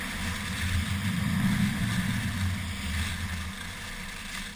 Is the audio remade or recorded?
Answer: recorded